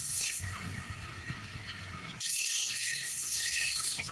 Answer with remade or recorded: remade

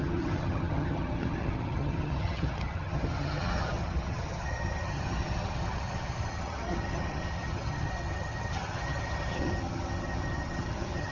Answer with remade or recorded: remade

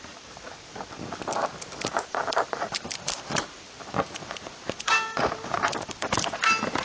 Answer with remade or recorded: remade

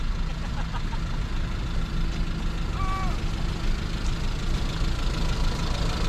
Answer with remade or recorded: recorded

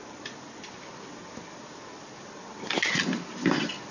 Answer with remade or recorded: recorded